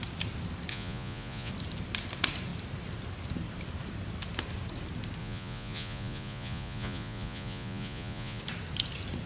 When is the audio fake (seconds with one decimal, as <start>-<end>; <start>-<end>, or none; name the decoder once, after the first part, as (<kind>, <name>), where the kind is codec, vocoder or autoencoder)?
0.7-1.5 (vocoder, Vocos); 5.2-8.4